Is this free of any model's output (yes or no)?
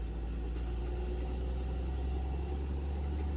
yes